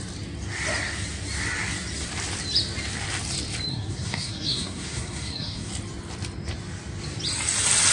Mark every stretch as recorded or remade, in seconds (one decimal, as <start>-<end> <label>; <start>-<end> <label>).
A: 0.0-3.7 recorded; 3.7-5.7 remade; 5.7-7.9 recorded